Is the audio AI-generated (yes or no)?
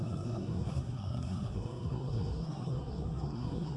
yes